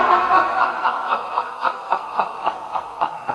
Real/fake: fake